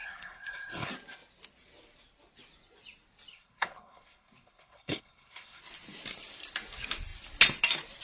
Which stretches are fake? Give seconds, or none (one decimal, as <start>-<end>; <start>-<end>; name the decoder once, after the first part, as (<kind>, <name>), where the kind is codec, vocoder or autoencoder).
0.0-0.9 (codec, HILCodec); 3.3-5.6